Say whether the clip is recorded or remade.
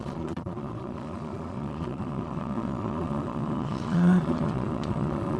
remade